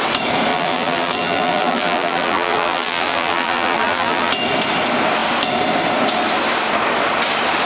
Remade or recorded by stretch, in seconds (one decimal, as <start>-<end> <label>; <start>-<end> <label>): 0.0-0.5 recorded; 0.5-4.3 remade; 4.3-7.7 recorded